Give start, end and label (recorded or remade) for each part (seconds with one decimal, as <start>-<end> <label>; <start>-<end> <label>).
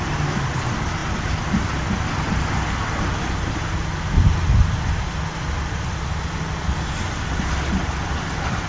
0.0-8.7 recorded